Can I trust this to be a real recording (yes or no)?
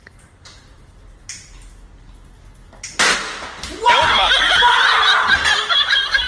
yes